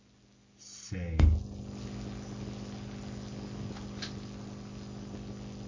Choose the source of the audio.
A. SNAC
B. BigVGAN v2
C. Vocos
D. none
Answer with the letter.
D